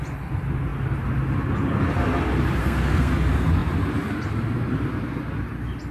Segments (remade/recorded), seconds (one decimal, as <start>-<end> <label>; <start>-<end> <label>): 0.0-2.6 recorded; 2.6-3.1 remade; 3.1-5.9 recorded